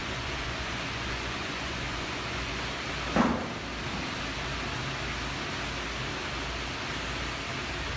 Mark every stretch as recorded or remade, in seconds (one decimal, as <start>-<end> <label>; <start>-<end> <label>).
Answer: 0.0-2.8 remade; 2.8-8.0 recorded